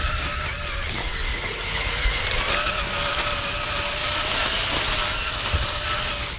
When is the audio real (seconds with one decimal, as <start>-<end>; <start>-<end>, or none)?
0.0-1.3; 2.2-6.4